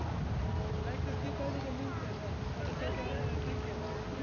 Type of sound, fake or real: real